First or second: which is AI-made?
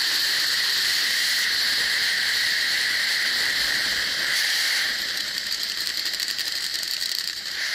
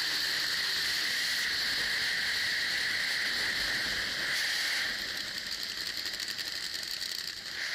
first